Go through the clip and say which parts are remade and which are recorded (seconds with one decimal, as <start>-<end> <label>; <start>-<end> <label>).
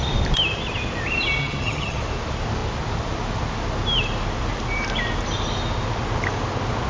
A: 0.0-1.4 recorded; 1.4-2.0 remade; 2.0-6.9 recorded